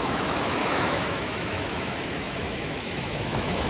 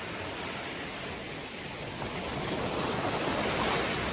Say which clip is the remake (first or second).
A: first